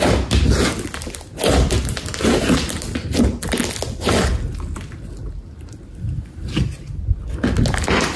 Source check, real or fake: real